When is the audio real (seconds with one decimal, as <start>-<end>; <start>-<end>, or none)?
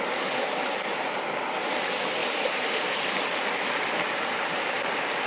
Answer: 0.0-2.2; 2.9-5.3